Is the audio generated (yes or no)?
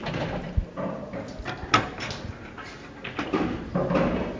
no